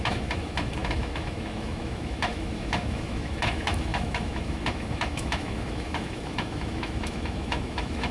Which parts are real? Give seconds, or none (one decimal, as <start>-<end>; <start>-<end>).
none